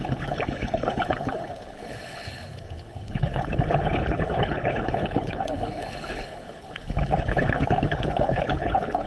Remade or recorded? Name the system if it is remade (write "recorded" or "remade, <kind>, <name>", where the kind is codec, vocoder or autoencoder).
remade, codec, HILCodec